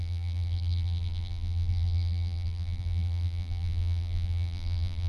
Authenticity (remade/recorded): remade